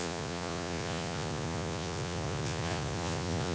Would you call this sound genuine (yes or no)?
no